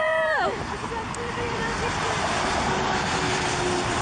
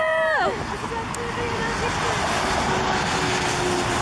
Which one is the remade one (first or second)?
first